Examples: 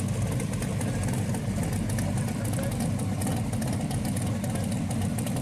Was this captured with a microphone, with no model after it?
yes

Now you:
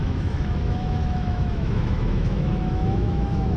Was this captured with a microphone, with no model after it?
no